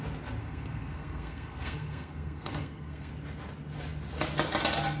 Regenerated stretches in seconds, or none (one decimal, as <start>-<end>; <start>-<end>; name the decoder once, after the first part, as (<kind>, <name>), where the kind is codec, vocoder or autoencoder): 0.4-3.1 (codec, SNAC)